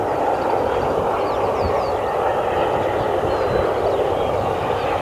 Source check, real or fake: real